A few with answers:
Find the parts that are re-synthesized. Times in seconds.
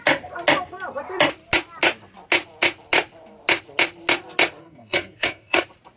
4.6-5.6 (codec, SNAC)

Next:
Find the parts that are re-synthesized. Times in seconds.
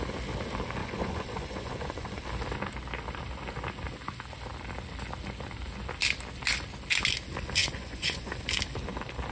0.8-2.2 (vocoder, Vocos); 7.6-8.3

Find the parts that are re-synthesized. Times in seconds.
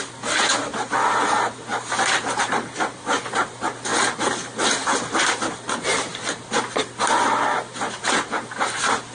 0.0-1.7 (vocoder, BigVGAN v2); 2.4-3.9; 7.3-9.1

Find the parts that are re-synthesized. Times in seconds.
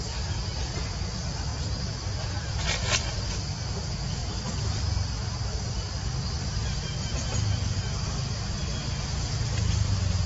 none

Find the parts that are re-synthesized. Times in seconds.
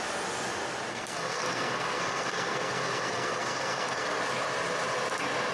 0.9-4.2 (codec, SNAC)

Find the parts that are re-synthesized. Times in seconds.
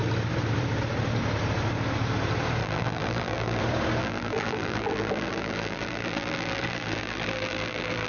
2.6-3.6 (vocoder, BigVGAN v2); 4.0-8.1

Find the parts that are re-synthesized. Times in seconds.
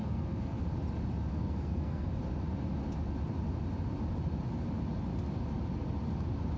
0.0-0.6 (codec, SNAC); 1.3-2.1